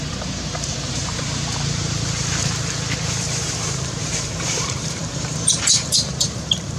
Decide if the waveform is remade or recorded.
remade